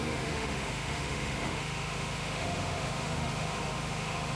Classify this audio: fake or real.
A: fake